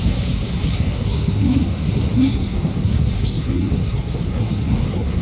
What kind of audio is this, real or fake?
fake